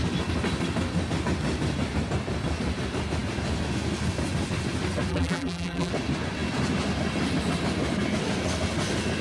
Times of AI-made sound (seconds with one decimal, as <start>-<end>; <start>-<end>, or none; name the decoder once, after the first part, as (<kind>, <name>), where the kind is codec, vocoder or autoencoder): 5.1-5.9 (vocoder, BigVGAN v2)

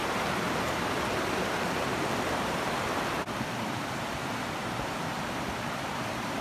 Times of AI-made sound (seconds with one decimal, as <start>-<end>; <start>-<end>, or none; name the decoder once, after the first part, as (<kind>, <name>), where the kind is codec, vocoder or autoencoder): 0.0-1.0 (vocoder, BigVGAN v2)

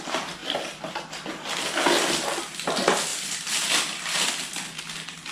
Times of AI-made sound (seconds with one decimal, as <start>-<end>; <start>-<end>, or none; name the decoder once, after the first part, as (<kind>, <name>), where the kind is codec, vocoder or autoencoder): 3.1-4.8 (vocoder, BigVGAN v2)

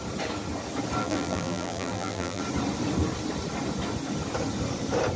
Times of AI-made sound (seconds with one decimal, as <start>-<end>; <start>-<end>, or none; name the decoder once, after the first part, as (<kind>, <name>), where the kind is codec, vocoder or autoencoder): 1.0-2.4 (vocoder, BigVGAN v2)